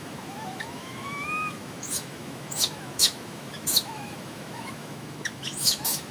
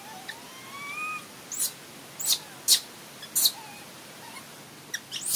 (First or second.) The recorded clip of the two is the second